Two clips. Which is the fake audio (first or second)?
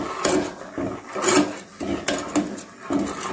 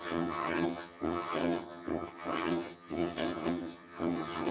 second